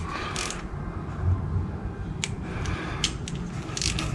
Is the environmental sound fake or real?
real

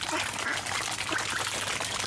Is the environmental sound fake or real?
real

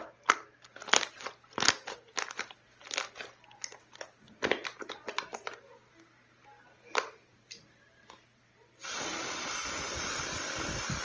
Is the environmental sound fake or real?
real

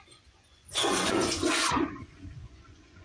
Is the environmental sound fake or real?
fake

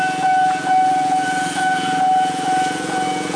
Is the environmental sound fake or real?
fake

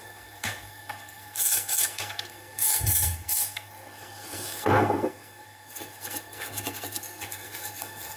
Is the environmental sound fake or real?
fake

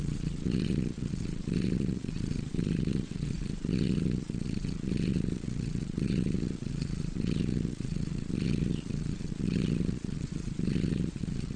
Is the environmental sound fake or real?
fake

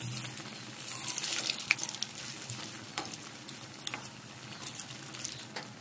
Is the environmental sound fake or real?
real